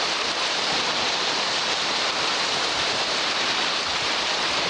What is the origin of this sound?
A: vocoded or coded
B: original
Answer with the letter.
A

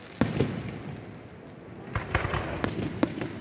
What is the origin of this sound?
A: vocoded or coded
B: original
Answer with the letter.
B